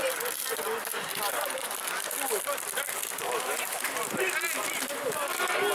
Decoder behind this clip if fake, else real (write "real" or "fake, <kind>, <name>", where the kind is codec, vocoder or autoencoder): real